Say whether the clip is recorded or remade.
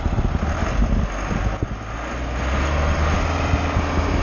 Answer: recorded